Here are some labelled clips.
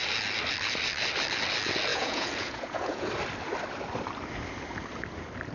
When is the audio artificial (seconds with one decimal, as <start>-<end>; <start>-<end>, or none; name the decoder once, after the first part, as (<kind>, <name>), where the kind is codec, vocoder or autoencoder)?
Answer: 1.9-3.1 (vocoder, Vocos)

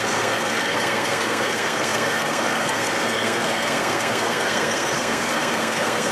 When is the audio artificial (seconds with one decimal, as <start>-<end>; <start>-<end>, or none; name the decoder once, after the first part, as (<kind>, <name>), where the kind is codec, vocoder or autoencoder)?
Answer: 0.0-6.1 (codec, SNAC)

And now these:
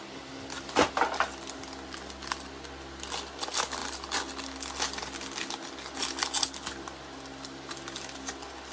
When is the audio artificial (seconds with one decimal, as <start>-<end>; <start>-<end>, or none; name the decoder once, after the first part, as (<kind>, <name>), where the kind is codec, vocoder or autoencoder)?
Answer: none

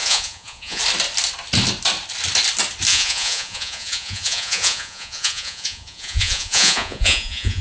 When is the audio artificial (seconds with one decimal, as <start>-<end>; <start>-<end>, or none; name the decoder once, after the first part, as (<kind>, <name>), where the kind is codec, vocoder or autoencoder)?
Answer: 0.0-0.8 (vocoder, Vocos); 2.9-7.6

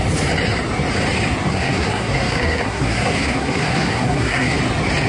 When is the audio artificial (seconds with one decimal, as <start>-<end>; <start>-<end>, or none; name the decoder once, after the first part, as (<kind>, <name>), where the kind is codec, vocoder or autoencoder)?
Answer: 1.5-4.6 (codec, SNAC)

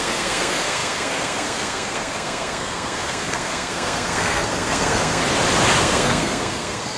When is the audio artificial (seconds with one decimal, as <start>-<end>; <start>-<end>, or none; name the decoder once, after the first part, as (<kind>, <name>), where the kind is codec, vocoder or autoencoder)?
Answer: 0.0-5.2 (codec, SNAC); 5.8-7.0